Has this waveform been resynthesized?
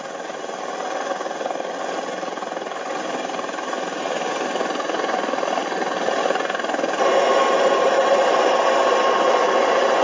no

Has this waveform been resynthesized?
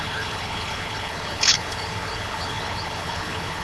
yes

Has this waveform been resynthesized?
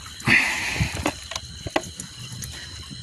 no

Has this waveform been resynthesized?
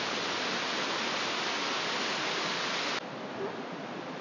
no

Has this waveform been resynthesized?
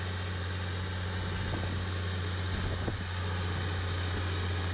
no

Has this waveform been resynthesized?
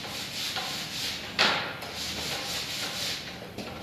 no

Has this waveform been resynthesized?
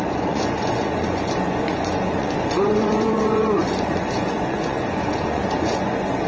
yes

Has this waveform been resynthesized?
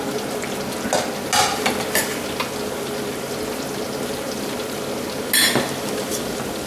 no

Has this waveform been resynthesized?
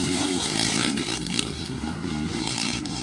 yes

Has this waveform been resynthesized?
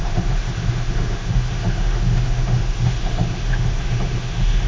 yes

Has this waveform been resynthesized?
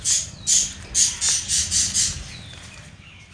no